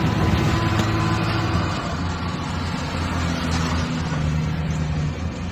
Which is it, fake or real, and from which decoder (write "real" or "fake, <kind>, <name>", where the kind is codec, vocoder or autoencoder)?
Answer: real